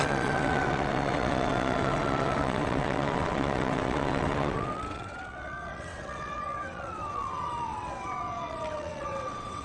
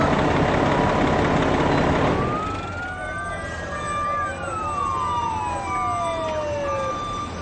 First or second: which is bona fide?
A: second